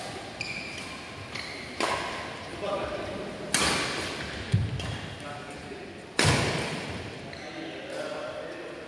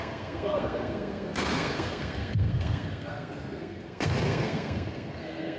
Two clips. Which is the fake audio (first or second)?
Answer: second